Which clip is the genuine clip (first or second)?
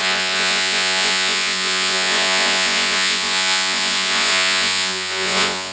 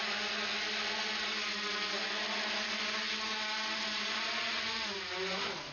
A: second